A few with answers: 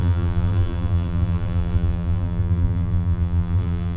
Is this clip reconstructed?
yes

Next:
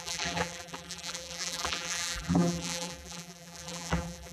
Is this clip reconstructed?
yes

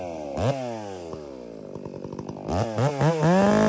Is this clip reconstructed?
no